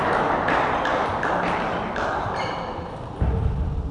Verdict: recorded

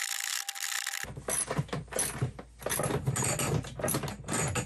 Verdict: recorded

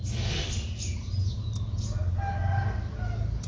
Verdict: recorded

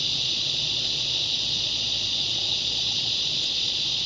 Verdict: remade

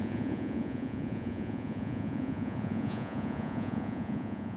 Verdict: remade